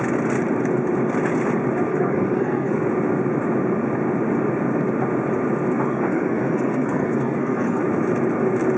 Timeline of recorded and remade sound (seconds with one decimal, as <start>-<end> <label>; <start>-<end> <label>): 0.0-1.9 recorded; 1.9-2.8 remade; 2.8-5.9 recorded; 5.9-7.8 remade; 7.8-8.8 recorded